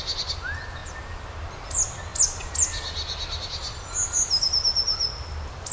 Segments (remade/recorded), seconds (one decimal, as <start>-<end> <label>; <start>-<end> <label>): 0.0-5.7 recorded